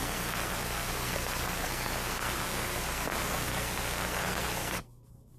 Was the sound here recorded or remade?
remade